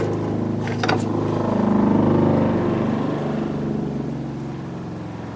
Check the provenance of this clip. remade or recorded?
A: recorded